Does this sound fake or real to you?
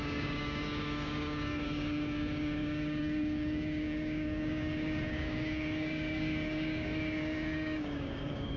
fake